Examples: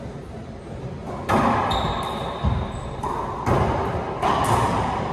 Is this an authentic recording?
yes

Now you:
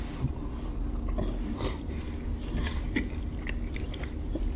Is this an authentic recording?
yes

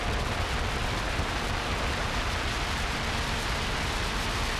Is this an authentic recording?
yes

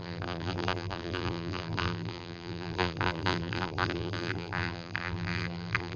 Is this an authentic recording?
no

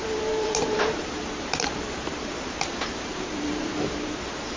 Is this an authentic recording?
no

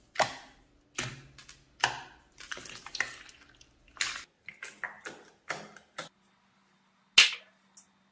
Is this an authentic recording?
yes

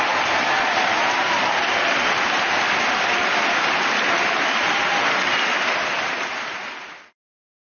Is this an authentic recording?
yes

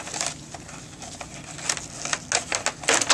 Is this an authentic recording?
yes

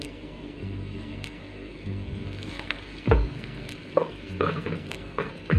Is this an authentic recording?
no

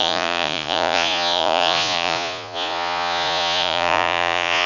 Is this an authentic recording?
no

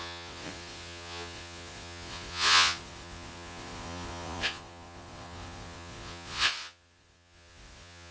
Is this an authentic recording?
no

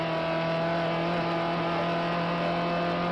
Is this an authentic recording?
yes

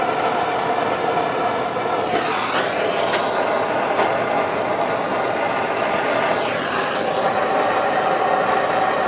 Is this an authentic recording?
yes